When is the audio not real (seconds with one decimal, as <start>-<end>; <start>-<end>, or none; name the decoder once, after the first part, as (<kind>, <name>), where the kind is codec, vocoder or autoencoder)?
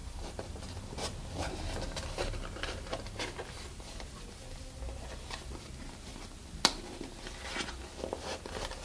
0.0-0.5 (vocoder, BigVGAN v2)